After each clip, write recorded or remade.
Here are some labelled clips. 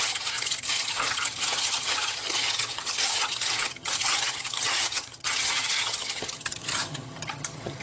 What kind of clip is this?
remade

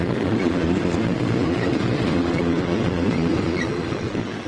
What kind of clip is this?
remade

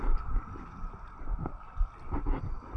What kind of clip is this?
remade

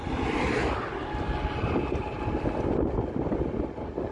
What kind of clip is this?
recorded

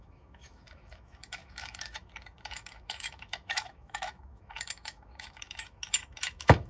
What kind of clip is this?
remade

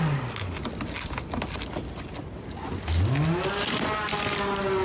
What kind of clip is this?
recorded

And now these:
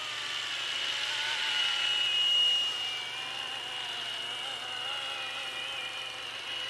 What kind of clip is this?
recorded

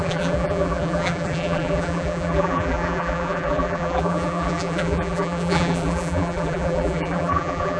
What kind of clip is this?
remade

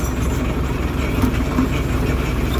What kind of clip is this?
remade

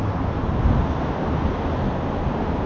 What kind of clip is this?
recorded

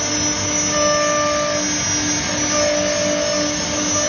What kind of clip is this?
recorded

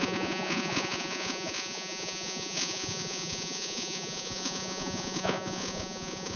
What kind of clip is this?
remade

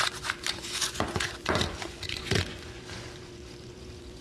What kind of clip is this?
remade